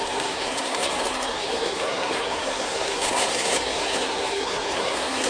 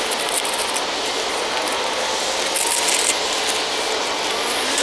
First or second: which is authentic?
second